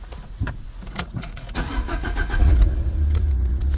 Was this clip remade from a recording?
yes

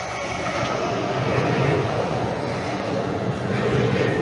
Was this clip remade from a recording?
yes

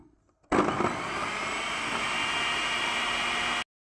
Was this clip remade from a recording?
no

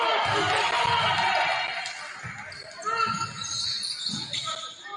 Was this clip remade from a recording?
no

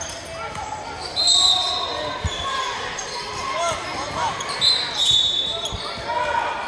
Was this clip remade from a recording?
no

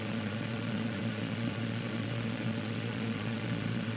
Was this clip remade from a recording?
yes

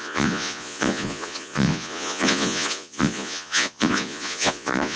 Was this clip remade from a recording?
yes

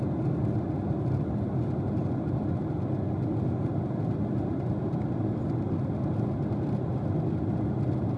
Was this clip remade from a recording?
no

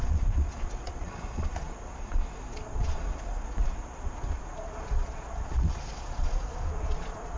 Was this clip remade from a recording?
yes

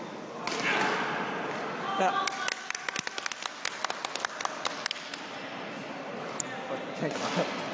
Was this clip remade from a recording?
no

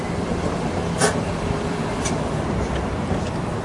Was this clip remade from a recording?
no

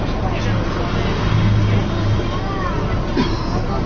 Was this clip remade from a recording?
no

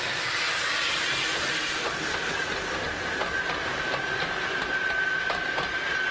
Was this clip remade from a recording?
no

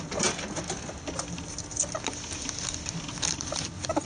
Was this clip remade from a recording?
no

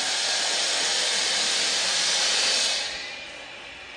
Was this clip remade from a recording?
no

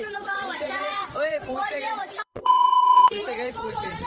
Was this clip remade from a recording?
yes